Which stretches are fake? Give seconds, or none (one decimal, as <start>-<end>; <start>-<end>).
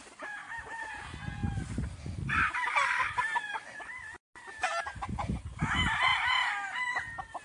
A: none